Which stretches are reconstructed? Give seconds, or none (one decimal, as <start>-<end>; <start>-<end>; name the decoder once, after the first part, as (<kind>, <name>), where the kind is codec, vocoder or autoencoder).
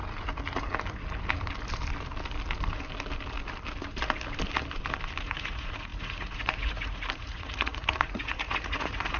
5.2-9.2 (vocoder, Vocos)